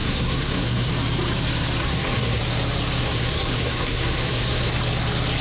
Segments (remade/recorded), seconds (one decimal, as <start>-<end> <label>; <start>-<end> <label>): 0.0-0.9 remade; 0.9-1.8 recorded; 1.8-2.4 remade; 2.4-3.0 recorded; 3.0-4.7 remade; 4.7-5.4 recorded

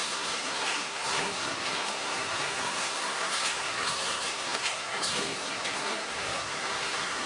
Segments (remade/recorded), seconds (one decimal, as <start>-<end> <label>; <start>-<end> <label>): 0.0-7.3 remade

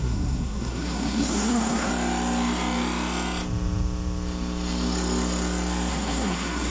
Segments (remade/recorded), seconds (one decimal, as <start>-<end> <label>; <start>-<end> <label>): 0.0-1.9 remade; 1.9-5.9 recorded; 5.9-6.7 remade